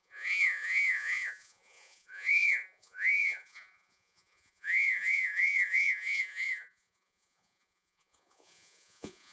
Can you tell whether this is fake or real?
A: fake